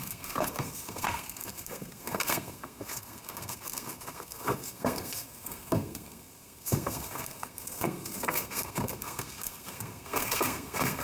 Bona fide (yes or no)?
no